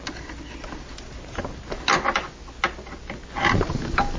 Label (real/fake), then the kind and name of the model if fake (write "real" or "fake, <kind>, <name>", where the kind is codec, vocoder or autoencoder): real